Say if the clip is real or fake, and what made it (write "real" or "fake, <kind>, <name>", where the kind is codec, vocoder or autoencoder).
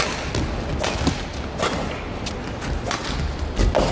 real